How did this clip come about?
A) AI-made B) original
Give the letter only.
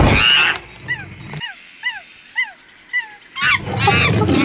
B